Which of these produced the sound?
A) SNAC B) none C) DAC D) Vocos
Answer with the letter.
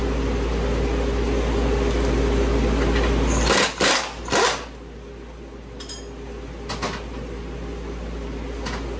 B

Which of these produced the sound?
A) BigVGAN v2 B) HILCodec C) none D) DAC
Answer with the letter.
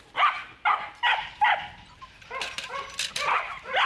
C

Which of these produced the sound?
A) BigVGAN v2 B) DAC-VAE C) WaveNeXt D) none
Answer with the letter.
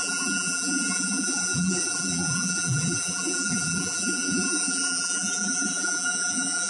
A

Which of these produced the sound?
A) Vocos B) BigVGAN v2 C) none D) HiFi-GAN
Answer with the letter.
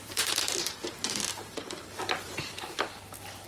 B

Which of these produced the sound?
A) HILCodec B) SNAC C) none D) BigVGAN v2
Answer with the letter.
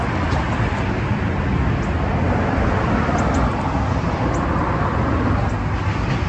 C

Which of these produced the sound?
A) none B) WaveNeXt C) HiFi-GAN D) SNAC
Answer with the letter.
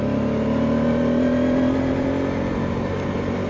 A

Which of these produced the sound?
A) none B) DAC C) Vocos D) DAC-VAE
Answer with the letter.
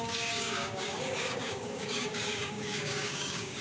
B